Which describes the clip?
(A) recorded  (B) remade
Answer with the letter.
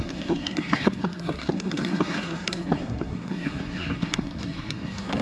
B